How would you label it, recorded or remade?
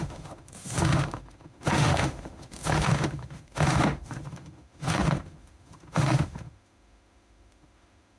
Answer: remade